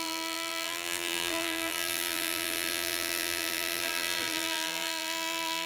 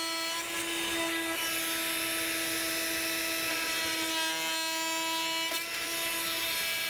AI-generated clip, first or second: first